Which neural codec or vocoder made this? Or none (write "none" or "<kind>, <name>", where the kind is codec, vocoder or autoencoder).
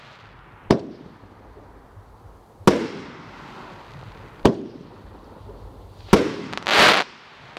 none